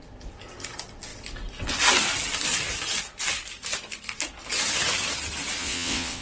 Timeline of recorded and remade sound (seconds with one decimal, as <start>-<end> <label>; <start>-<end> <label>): 0.0-5.6 recorded; 5.6-6.2 remade